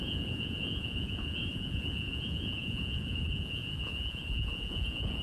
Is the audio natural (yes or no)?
no